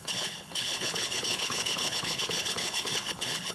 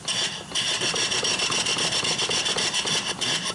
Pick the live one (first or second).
second